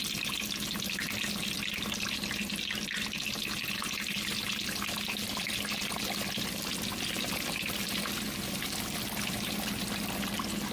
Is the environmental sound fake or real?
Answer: real